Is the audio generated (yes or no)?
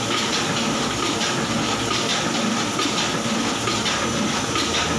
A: no